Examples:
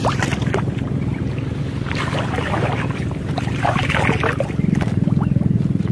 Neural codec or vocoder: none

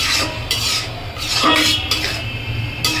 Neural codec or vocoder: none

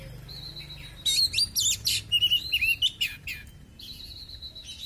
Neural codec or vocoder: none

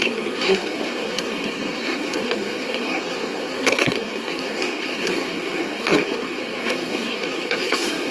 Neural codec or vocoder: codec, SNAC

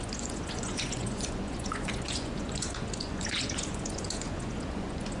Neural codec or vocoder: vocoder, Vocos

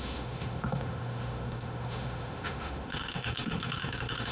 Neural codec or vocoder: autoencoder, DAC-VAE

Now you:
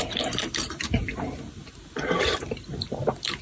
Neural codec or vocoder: vocoder, BigVGAN v2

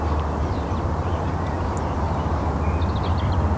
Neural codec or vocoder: vocoder, BigVGAN v2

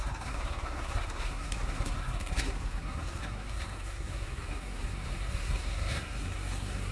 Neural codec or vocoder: codec, SNAC